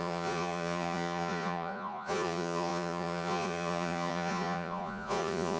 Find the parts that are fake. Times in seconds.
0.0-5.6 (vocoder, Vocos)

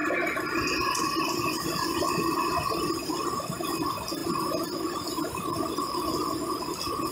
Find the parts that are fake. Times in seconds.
none

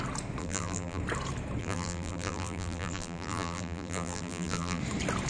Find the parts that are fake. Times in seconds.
0.4-1.0 (vocoder, BigVGAN v2); 1.6-4.8

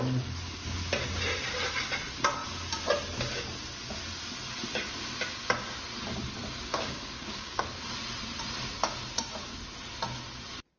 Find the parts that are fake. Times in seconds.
6.7-7.6 (codec, DAC)

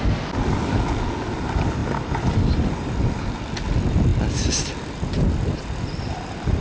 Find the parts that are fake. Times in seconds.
none

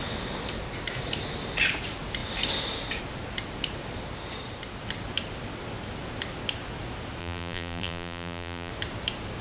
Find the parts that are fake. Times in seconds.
7.2-8.7 (vocoder, BigVGAN v2)